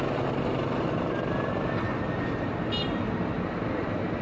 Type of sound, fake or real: real